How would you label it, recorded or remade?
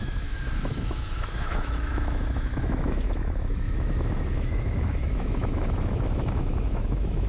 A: remade